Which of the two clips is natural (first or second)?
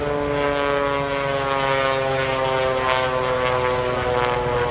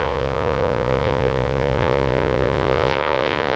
first